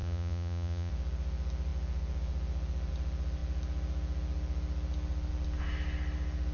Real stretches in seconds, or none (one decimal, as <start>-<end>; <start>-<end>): 0.9-6.5